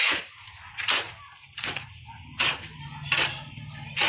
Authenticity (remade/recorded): recorded